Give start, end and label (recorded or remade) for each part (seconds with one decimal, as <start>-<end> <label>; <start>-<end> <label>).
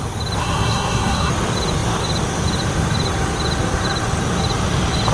0.0-0.4 recorded; 0.4-1.3 remade; 1.3-5.1 recorded